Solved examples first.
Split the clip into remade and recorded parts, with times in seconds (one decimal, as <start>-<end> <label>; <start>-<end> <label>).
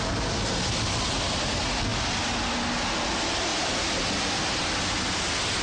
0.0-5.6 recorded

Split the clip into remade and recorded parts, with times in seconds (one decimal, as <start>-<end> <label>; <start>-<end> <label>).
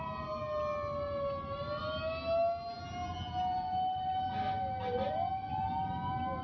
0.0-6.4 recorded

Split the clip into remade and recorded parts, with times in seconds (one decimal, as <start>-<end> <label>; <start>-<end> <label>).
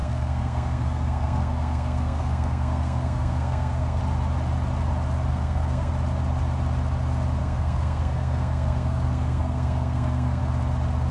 0.0-4.0 remade; 4.0-5.3 recorded; 5.3-5.9 remade; 5.9-7.4 recorded; 7.4-10.4 remade; 10.4-11.1 recorded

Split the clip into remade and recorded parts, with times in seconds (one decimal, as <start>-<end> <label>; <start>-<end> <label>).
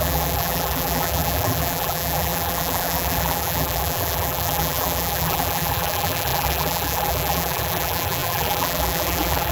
0.0-9.5 remade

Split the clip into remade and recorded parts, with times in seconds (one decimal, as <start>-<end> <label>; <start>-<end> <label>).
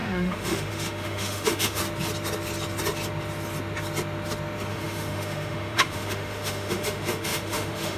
0.0-1.8 remade; 1.8-4.7 recorded; 4.7-8.0 remade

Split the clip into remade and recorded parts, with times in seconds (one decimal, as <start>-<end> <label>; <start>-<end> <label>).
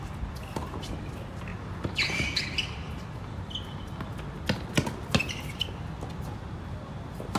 0.0-7.4 recorded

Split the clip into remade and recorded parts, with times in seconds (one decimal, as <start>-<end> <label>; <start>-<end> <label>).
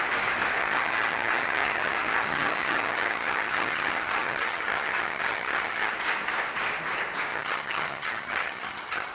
0.0-0.6 recorded; 0.6-5.9 remade; 5.9-7.3 recorded; 7.3-9.1 remade